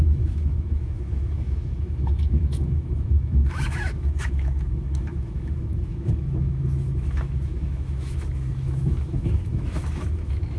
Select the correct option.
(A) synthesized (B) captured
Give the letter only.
A